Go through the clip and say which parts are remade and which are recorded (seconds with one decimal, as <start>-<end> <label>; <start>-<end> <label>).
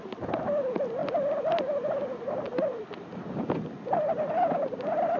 0.0-5.2 recorded